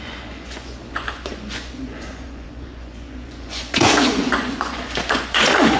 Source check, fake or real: fake